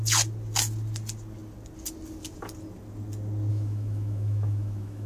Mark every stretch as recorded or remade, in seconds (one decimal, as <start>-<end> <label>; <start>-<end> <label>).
0.0-3.5 recorded; 3.5-5.1 remade